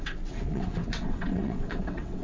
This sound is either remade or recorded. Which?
remade